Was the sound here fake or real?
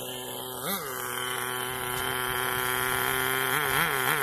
real